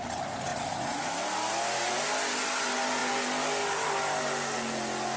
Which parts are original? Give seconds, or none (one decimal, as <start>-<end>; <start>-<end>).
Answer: 0.0-5.2